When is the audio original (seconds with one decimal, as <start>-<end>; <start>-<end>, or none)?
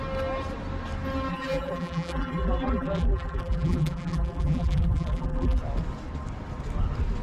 0.0-1.3; 5.6-7.2